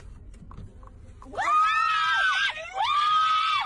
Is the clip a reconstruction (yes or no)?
no